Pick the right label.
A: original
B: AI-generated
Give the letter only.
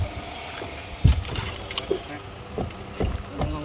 A